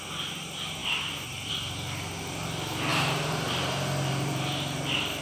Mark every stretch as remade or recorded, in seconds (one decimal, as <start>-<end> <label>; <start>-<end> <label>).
0.0-0.8 recorded; 0.8-1.5 remade; 1.5-2.9 recorded; 2.9-5.2 remade